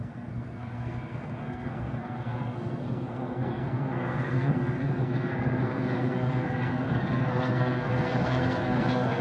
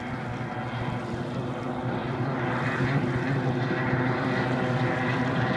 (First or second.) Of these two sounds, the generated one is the first